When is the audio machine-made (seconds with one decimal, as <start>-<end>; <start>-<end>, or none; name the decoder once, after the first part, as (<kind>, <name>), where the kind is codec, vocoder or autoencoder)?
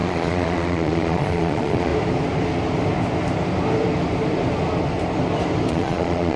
0.0-1.9 (vocoder, Vocos); 5.7-6.4